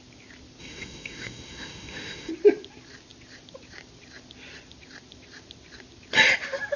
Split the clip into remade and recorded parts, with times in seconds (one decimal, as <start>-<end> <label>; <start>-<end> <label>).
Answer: 0.0-0.6 recorded; 0.6-2.3 remade; 2.3-6.8 recorded